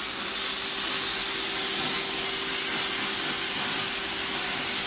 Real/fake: real